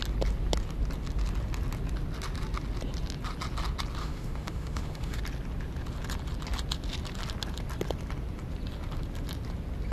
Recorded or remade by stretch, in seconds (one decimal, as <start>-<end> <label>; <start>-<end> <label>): 0.0-4.0 recorded; 4.0-5.2 remade; 5.2-9.9 recorded